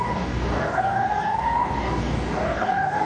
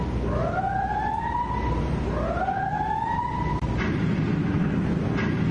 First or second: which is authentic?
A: second